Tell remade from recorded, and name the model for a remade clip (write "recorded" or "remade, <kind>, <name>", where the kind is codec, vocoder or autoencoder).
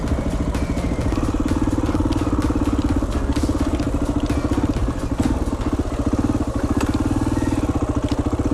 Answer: recorded